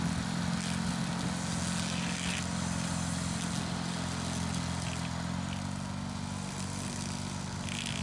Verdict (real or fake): real